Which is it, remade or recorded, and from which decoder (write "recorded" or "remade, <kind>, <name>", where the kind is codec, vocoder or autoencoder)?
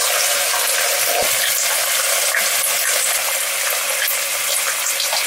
recorded